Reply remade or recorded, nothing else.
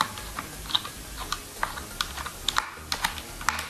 recorded